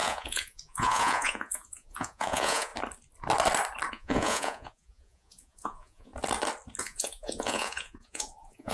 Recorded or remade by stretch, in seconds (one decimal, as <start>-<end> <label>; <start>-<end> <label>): 0.0-2.7 remade; 2.7-3.9 recorded; 3.9-6.1 remade; 6.1-6.8 recorded; 6.8-8.7 remade